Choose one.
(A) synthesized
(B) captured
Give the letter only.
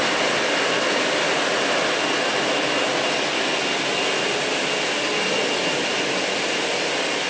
B